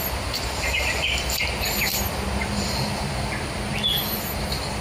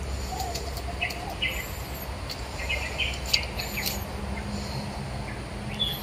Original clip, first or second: second